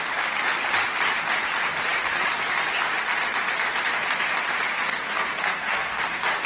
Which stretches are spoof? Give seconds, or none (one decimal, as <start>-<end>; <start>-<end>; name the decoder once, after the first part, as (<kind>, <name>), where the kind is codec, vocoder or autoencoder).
4.9-6.0 (codec, SNAC)